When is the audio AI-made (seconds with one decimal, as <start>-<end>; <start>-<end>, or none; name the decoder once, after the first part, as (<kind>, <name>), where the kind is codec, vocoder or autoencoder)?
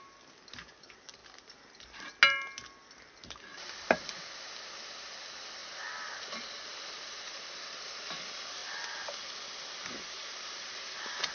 1.2-2.1 (vocoder, BigVGAN v2)